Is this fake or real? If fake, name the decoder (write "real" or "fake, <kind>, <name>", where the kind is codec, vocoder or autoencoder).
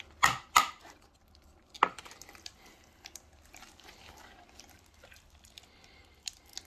real